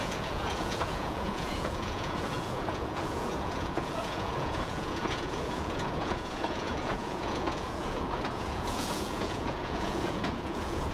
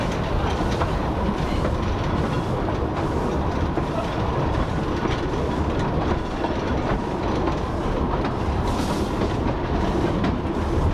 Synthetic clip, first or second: first